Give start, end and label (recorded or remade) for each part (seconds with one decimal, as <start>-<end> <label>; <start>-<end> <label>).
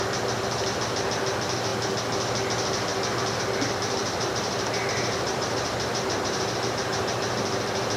0.0-4.0 recorded; 4.0-7.2 remade; 7.2-8.0 recorded